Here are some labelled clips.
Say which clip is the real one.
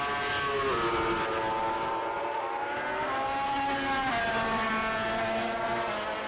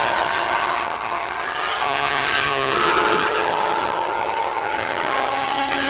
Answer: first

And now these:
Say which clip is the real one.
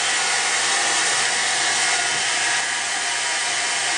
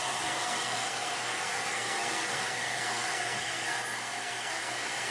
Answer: first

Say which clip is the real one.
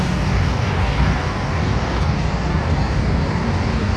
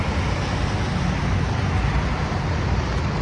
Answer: second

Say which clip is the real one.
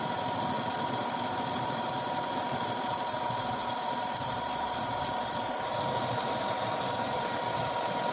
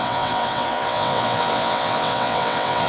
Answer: first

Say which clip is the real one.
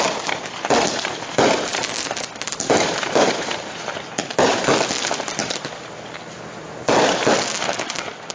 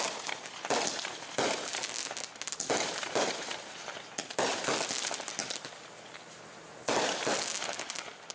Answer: second